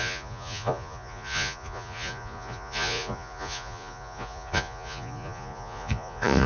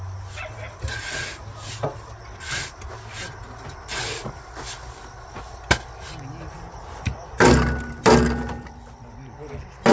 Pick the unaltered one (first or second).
second